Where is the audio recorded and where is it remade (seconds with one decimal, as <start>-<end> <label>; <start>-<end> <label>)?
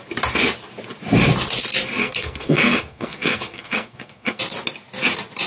0.0-2.0 recorded; 2.0-4.4 remade; 4.4-5.5 recorded